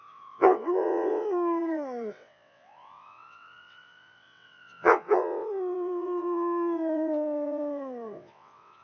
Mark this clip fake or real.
fake